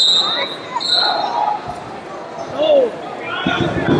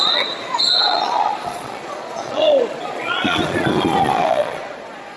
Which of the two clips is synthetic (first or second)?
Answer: second